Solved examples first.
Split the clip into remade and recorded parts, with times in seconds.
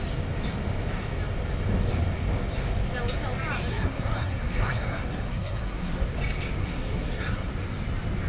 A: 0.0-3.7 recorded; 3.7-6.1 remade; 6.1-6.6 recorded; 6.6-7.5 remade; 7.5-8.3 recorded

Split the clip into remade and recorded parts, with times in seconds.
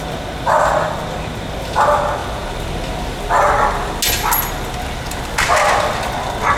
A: 0.0-6.6 recorded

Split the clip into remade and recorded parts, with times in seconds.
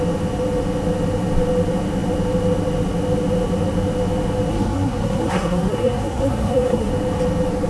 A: 0.0-4.5 recorded; 4.5-6.9 remade; 6.9-7.7 recorded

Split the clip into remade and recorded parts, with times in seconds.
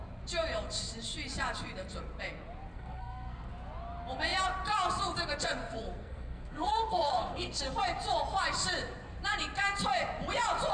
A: 0.0-2.7 recorded; 2.7-3.5 remade; 3.5-5.6 recorded; 5.6-7.6 remade; 7.6-10.7 recorded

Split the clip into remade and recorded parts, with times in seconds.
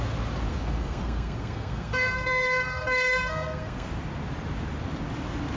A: 0.0-0.5 recorded; 0.5-3.9 remade; 3.9-5.6 recorded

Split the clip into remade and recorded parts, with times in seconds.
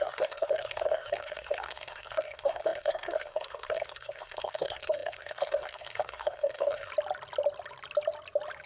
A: 0.0-6.9 remade; 6.9-8.7 recorded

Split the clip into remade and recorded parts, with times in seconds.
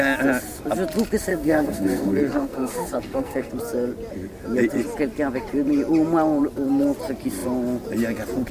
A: 0.0-1.3 recorded; 1.3-3.5 remade; 3.5-8.5 recorded